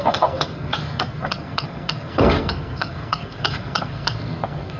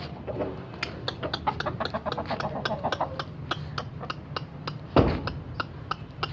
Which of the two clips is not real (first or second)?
first